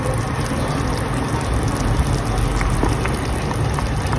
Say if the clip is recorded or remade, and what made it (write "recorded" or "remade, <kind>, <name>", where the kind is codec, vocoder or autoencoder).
recorded